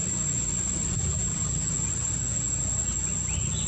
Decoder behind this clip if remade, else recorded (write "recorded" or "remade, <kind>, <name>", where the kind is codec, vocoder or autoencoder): recorded